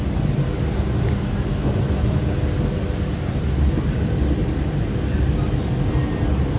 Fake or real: real